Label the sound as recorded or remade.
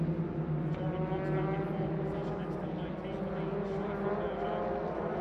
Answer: recorded